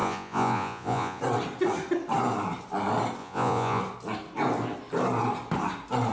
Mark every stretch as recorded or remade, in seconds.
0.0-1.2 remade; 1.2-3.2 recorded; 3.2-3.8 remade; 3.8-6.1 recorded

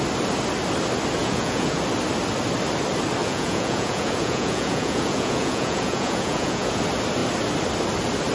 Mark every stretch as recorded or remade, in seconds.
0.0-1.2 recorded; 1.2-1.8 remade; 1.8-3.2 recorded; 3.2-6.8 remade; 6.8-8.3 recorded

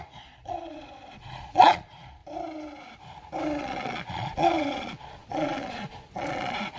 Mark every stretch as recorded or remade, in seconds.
0.0-2.2 remade; 2.2-3.6 recorded; 3.6-6.8 remade

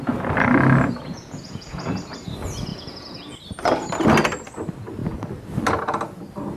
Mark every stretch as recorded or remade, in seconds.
0.0-1.1 recorded; 1.1-2.0 remade; 2.0-2.7 recorded; 2.7-3.4 remade; 3.4-6.6 recorded

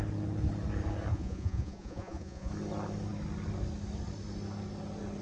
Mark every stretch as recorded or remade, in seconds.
0.0-1.1 recorded; 1.1-2.5 remade; 2.5-5.2 recorded